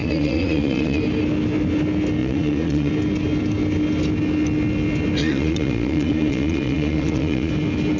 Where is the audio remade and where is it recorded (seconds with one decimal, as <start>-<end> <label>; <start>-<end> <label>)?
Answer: 0.0-1.0 remade; 1.0-2.2 recorded; 2.2-2.9 remade; 2.9-5.2 recorded; 5.2-7.5 remade; 7.5-8.0 recorded